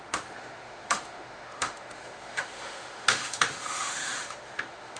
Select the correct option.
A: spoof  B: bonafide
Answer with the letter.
A